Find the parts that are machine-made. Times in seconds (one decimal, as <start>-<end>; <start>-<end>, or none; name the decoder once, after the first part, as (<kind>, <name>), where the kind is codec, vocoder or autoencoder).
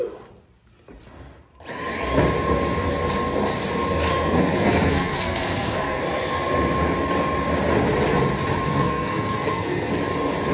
4.1-6.0 (codec, SNAC); 8.7-10.0